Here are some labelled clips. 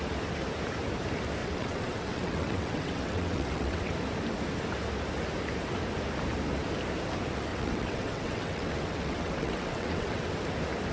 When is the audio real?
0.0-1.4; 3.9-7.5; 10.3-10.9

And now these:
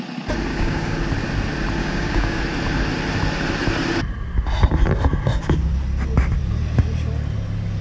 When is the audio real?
0.0-0.5; 1.0-1.8; 2.4-7.8

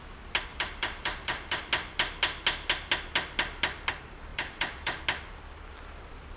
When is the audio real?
0.0-0.5; 1.6-4.3; 5.0-6.4

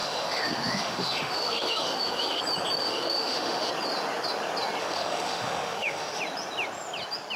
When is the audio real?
2.4-2.8; 3.7-4.8; 6.2-7.4

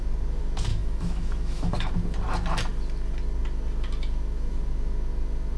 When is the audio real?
0.0-0.7; 1.9-5.6

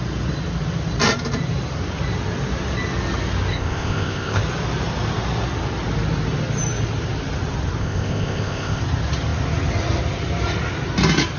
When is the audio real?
0.0-3.5; 4.4-7.8; 8.8-11.4

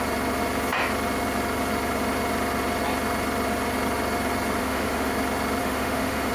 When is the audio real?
0.0-4.6; 5.1-5.6